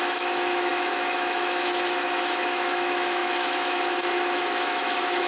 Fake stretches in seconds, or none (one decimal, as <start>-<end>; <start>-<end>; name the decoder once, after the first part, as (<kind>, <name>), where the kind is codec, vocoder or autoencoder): 0.0-5.3 (autoencoder, DAC-VAE)